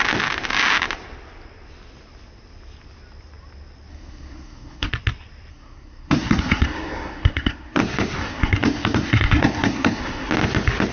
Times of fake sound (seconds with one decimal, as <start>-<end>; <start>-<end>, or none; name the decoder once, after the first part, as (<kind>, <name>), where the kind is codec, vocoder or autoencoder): 3.9-4.9 (codec, SNAC); 5.5-7.8; 8.2-10.3